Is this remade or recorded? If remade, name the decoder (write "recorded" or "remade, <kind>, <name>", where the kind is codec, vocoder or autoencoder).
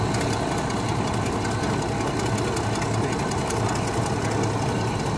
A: recorded